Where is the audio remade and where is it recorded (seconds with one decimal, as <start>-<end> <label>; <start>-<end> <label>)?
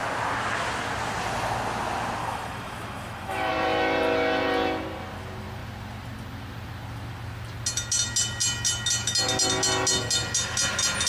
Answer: 0.0-2.2 recorded; 2.2-3.5 remade; 3.5-11.1 recorded